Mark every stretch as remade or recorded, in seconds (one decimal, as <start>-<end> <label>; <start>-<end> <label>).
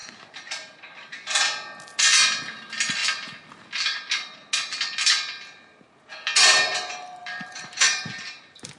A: 0.0-7.2 recorded; 7.2-8.4 remade; 8.4-8.8 recorded